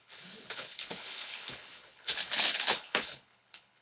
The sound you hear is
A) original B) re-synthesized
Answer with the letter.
B